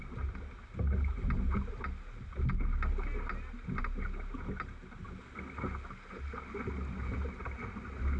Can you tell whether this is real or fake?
real